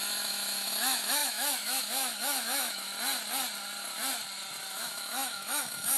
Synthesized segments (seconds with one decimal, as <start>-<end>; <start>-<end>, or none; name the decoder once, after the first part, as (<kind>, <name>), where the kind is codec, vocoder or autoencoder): 0.0-2.9 (autoencoder, DAC-VAE); 4.7-6.0